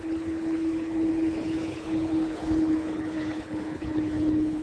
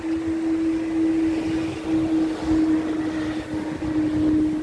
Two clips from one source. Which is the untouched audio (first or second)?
second